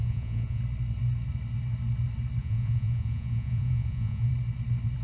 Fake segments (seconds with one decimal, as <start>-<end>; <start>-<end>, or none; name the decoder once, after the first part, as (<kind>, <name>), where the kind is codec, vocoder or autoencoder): 0.0-0.6 (vocoder, Vocos); 2.4-4.3